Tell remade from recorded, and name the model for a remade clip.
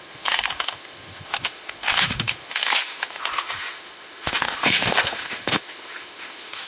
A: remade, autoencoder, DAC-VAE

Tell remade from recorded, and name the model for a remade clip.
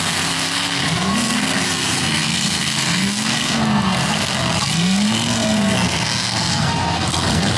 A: remade, codec, SNAC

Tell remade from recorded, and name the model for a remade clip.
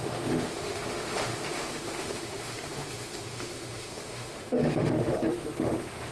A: remade, autoencoder, DAC-VAE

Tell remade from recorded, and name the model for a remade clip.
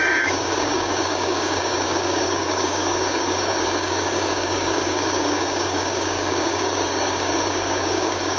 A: remade, codec, DAC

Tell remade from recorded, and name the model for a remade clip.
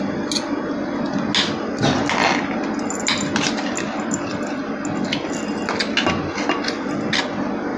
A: recorded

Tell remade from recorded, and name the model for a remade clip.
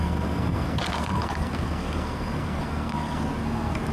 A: remade, codec, SNAC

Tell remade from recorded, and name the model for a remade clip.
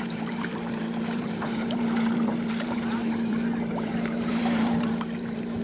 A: remade, vocoder, BigVGAN v2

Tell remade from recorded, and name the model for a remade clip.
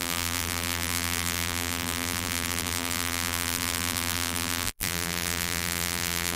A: remade, vocoder, BigVGAN v2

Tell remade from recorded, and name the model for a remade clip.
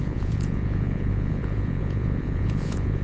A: remade, vocoder, Vocos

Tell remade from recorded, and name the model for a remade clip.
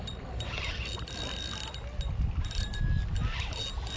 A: recorded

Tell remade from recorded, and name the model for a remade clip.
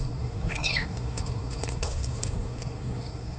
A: remade, codec, SNAC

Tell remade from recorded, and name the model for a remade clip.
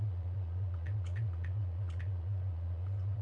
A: remade, vocoder, Vocos